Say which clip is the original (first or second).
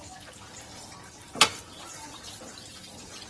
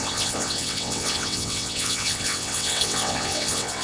first